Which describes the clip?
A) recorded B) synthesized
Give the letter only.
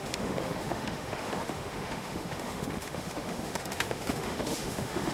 B